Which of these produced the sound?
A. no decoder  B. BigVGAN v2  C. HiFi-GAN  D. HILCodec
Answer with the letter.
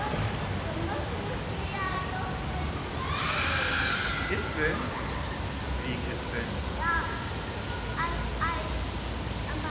A